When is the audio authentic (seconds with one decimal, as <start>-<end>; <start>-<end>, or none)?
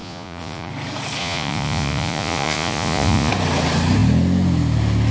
0.7-1.2; 3.3-5.1